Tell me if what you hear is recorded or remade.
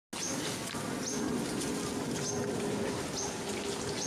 recorded